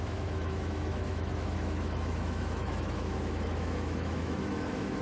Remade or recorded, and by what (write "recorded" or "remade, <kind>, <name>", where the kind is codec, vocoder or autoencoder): remade, autoencoder, DAC-VAE